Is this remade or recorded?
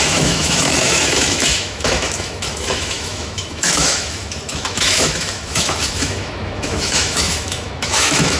remade